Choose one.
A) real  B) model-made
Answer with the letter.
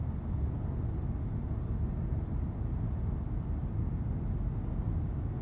A